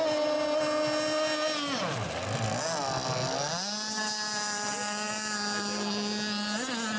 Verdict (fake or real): real